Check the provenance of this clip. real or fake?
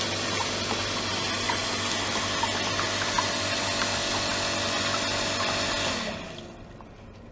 real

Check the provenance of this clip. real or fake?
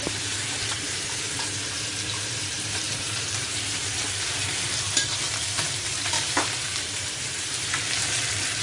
fake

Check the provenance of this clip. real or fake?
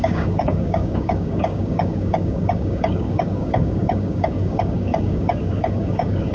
fake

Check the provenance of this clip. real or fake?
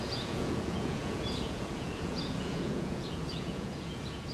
fake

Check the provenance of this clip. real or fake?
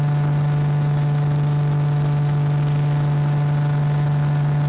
real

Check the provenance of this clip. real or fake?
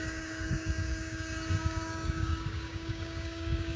fake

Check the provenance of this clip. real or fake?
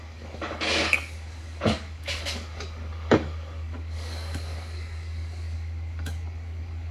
fake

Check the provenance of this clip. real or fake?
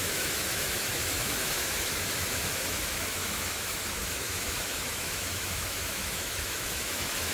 fake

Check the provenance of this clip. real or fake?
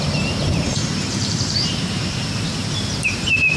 fake